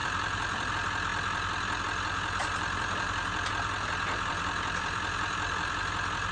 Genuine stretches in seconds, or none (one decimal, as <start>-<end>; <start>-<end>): 0.7-2.4; 5.8-6.3